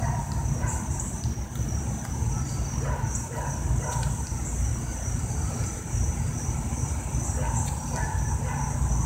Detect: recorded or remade recorded